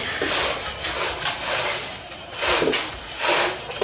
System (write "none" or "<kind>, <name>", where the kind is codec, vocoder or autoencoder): none